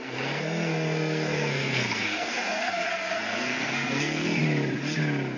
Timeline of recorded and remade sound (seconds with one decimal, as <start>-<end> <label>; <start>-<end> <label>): 0.0-4.4 remade; 4.4-5.4 recorded